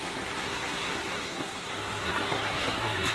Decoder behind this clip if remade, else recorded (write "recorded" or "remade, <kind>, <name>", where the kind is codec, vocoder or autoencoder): remade, codec, SNAC